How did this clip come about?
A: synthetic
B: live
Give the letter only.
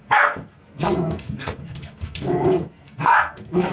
A